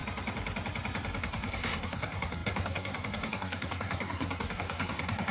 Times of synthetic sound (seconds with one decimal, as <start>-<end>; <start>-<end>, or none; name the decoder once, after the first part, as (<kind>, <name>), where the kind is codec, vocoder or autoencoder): 1.2-5.3 (codec, SNAC)